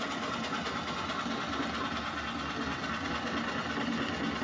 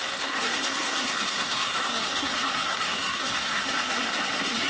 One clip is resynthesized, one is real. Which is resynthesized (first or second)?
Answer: second